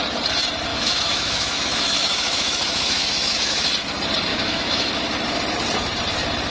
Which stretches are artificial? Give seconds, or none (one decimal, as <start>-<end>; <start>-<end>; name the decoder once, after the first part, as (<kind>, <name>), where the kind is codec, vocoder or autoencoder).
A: 0.7-3.7 (autoencoder, DAC-VAE); 4.3-4.9